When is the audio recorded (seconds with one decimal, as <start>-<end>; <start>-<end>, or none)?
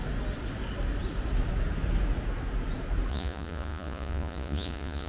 0.0-3.1